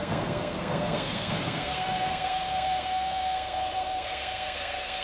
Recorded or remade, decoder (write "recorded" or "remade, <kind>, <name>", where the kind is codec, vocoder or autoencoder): remade, codec, SNAC